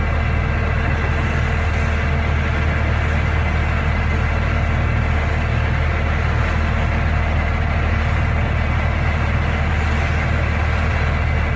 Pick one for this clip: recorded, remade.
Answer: recorded